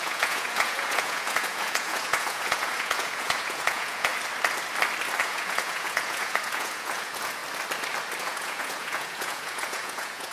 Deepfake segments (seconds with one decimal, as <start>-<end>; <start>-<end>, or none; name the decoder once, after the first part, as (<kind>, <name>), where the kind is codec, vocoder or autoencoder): 0.0-4.1 (vocoder, Vocos); 5.2-7.4; 8.2-10.3